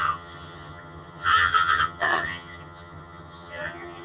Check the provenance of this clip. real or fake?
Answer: fake